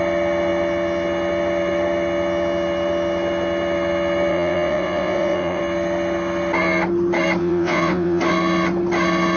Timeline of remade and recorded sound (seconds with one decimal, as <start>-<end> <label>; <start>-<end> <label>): 0.0-4.3 recorded; 4.3-5.6 remade; 5.6-7.4 recorded; 7.4-8.2 remade; 8.2-9.4 recorded